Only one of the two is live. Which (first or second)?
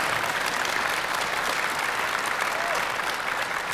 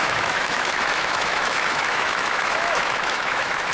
first